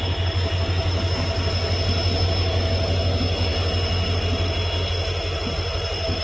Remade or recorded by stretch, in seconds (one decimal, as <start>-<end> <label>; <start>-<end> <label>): 0.0-6.2 recorded